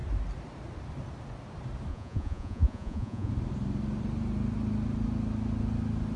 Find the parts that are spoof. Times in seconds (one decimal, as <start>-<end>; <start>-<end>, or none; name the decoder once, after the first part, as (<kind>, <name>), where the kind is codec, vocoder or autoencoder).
1.9-3.3 (vocoder, Vocos)